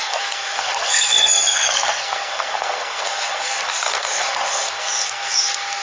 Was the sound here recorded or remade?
remade